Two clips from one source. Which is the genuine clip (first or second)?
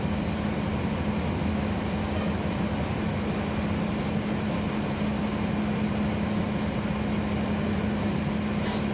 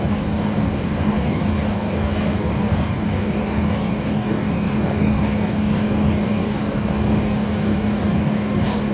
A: first